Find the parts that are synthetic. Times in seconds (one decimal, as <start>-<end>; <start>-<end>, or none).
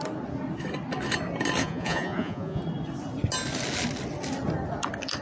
1.6-2.6